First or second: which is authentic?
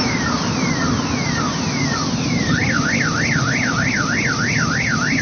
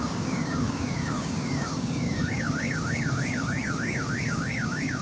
first